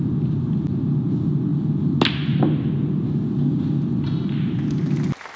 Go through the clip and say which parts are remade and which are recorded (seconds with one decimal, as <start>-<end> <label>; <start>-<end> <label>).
0.0-5.4 recorded